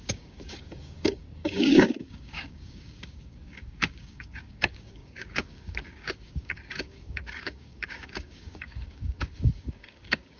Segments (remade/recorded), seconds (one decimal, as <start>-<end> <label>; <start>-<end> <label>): 0.0-10.4 remade